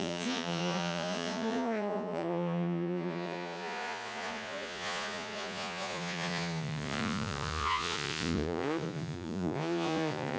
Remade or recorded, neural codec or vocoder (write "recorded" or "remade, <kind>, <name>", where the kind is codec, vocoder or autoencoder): remade, vocoder, Vocos